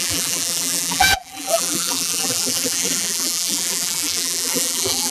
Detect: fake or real fake